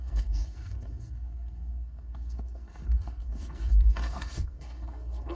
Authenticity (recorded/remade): remade